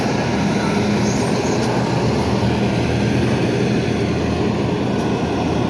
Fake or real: real